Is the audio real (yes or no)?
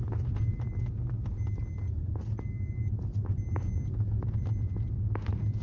yes